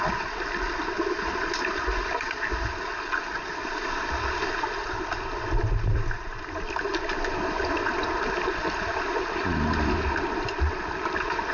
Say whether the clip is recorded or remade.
recorded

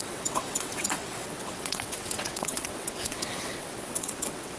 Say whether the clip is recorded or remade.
remade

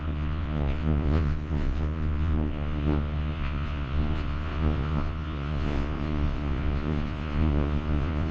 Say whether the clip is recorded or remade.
remade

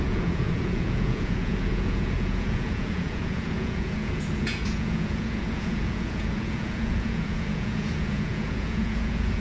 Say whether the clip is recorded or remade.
remade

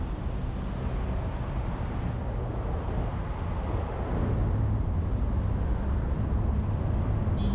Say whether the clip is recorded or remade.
recorded